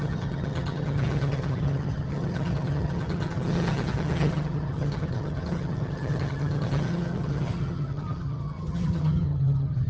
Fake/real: fake